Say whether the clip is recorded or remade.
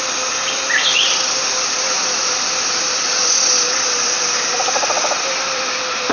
recorded